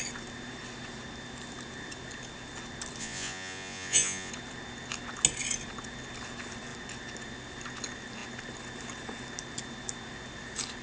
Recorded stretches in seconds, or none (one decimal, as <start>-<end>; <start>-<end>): 0.0-3.0; 4.3-10.8